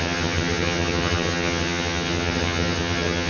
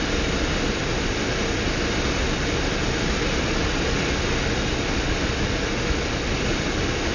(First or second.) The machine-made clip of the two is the first